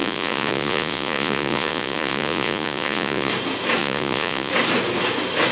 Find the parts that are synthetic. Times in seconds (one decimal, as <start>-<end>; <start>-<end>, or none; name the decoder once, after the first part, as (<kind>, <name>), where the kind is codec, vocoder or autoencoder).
0.0-3.3 (vocoder, Vocos); 3.8-4.5

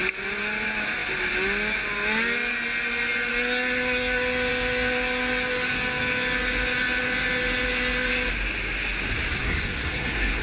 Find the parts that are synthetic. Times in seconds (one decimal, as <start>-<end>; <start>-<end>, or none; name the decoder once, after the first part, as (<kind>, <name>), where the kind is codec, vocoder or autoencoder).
9.4-10.4 (codec, SNAC)